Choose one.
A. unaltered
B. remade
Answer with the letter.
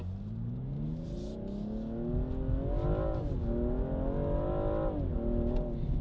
A